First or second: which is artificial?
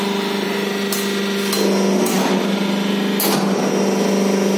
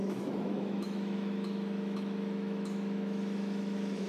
second